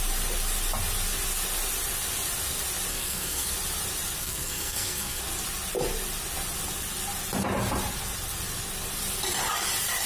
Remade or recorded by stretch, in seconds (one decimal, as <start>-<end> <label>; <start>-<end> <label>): 0.0-2.9 recorded; 2.9-3.5 remade; 3.5-4.2 recorded; 4.2-5.2 remade; 5.2-10.1 recorded